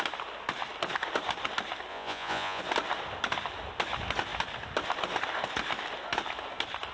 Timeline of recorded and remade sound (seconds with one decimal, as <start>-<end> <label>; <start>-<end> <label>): 0.0-1.9 recorded; 1.9-2.6 remade; 2.6-6.9 recorded